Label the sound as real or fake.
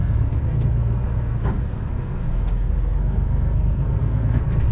fake